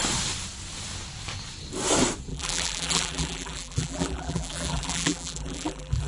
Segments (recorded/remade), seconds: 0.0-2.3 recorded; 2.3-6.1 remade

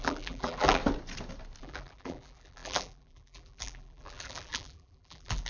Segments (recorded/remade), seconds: 0.0-0.8 remade; 0.8-1.6 recorded; 1.6-5.5 remade

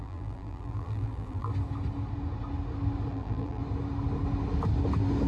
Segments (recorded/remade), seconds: 0.0-1.5 remade; 1.5-3.1 recorded; 3.1-3.6 remade; 3.6-5.3 recorded

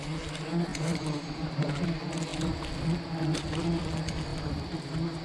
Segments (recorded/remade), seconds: 0.0-0.7 recorded; 0.7-1.7 remade; 1.7-4.3 recorded; 4.3-5.2 remade

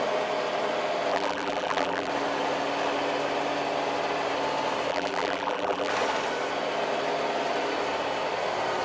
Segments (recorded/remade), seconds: 0.0-1.1 recorded; 1.1-2.1 remade; 2.1-4.9 recorded; 4.9-5.9 remade; 5.9-8.8 recorded

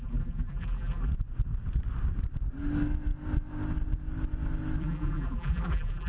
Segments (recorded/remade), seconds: 0.0-1.1 remade; 1.1-4.8 recorded; 4.8-6.1 remade